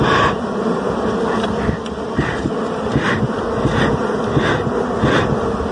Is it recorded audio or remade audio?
recorded